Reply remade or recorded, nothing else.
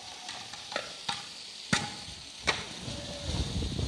recorded